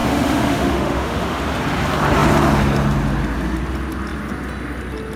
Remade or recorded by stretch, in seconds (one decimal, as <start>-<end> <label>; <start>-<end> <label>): 0.0-1.4 remade; 1.4-5.2 recorded